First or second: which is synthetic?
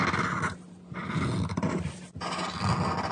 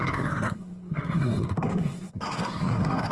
second